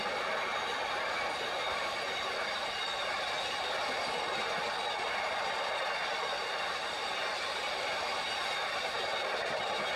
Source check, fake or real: real